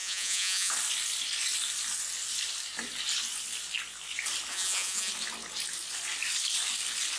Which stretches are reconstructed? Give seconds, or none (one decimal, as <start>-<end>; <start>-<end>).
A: 0.0-0.7; 4.5-5.1